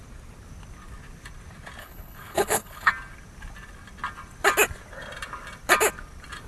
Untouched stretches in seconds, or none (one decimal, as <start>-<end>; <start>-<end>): 0.0-1.8; 2.9-6.5